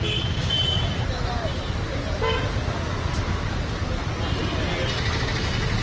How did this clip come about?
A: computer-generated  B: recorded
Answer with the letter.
B